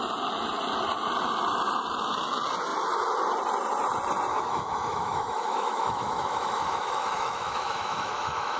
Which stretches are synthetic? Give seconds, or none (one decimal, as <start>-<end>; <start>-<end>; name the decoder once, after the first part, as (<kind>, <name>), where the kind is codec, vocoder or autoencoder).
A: 4.3-8.6 (autoencoder, DAC-VAE)